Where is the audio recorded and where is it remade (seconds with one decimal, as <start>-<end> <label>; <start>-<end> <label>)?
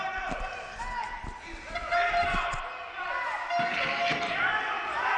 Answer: 0.0-5.2 recorded